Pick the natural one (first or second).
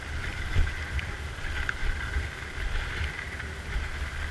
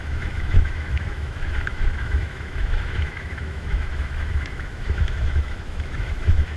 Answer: first